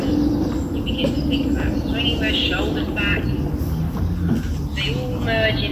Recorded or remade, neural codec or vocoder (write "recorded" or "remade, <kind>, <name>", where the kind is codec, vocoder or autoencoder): recorded